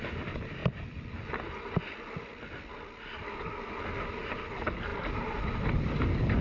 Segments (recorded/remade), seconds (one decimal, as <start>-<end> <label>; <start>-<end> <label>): 0.0-6.4 recorded